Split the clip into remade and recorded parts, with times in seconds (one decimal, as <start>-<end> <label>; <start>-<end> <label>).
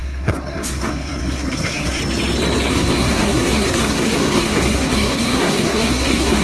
0.0-2.0 remade; 2.0-2.7 recorded; 2.7-6.4 remade